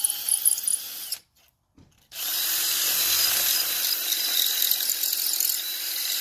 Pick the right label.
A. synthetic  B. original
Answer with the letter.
B